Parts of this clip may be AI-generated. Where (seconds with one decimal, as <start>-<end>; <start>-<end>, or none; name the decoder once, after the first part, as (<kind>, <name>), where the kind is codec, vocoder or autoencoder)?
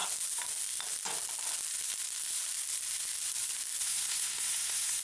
3.8-5.0 (codec, SNAC)